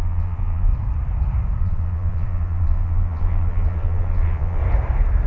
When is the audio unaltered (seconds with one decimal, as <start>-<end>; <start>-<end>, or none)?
0.7-1.6; 4.6-5.3